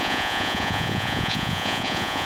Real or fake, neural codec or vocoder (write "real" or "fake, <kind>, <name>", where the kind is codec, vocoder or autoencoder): fake, vocoder, Vocos